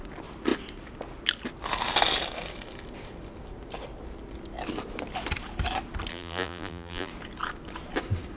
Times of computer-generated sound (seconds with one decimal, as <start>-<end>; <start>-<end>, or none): 6.1-7.1